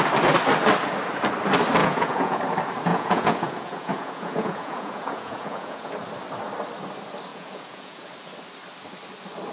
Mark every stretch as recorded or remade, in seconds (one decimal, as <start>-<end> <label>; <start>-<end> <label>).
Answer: 0.0-1.8 recorded; 1.8-2.4 remade; 2.4-2.9 recorded; 2.9-5.9 remade; 5.9-7.3 recorded; 7.3-8.0 remade; 8.0-9.5 recorded